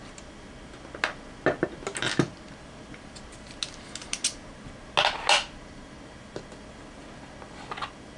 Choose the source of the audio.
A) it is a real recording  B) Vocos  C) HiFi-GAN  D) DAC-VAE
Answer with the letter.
A